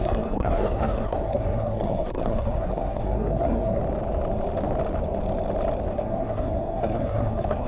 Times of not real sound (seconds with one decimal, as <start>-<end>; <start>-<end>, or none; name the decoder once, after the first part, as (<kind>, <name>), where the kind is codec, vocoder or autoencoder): 0.0-3.8 (codec, SNAC); 5.9-7.7